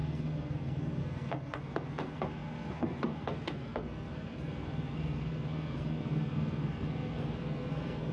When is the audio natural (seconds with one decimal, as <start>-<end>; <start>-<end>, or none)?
none